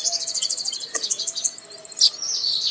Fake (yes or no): no